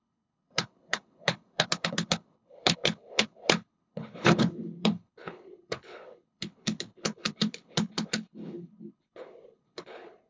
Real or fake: fake